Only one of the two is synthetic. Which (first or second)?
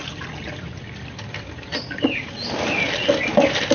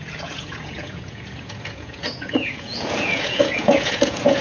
second